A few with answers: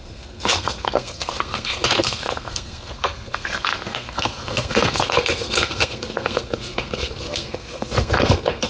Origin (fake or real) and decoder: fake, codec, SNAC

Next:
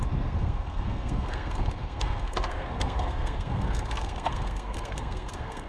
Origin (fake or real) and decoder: fake, codec, SNAC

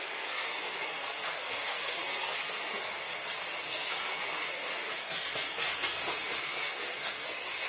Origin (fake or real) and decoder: fake, codec, SNAC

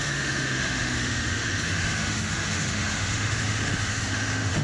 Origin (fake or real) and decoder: fake, autoencoder, DAC-VAE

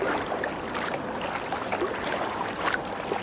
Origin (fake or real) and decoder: real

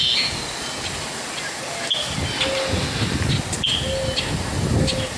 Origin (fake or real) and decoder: real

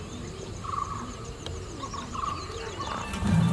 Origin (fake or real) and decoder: fake, vocoder, BigVGAN v2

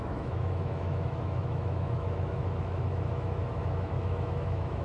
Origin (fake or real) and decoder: fake, autoencoder, DAC-VAE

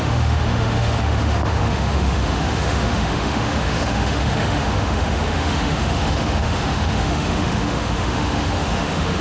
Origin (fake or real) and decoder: fake, autoencoder, DAC-VAE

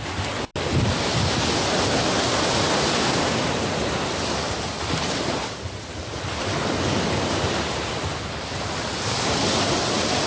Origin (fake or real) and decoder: real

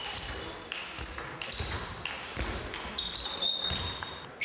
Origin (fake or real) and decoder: real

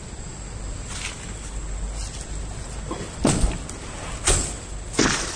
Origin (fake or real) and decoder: real